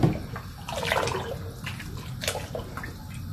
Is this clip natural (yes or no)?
yes